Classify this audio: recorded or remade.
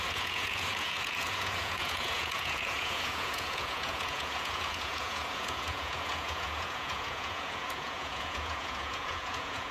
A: remade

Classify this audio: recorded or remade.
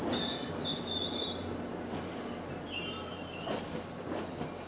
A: recorded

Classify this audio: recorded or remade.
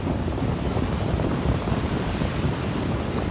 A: remade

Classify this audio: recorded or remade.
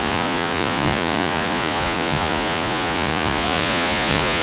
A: remade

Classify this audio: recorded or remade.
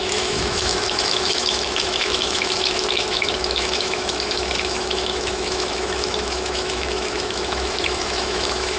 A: remade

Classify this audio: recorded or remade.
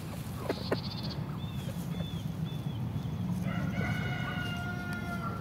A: recorded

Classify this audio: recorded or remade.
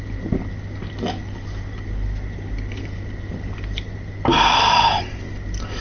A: recorded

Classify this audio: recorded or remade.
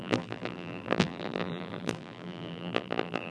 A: remade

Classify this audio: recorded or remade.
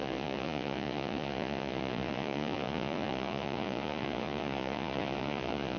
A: remade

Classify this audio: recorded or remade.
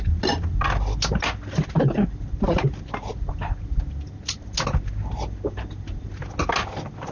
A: recorded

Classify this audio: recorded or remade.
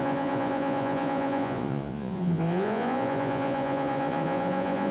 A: remade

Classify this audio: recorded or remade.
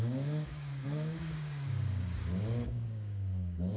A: remade